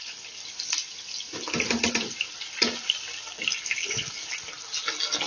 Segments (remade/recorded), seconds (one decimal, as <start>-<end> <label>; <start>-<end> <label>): 0.0-0.4 remade; 0.4-3.6 recorded; 3.6-4.2 remade; 4.2-5.3 recorded